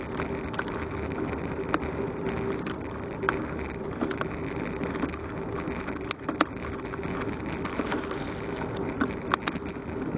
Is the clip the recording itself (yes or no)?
yes